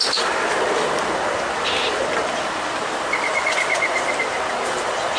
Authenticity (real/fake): real